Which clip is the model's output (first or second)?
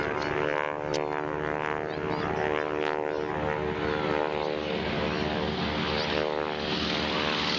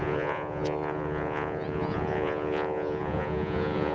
second